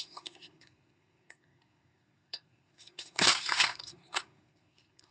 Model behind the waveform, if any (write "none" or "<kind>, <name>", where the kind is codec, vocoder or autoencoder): codec, SNAC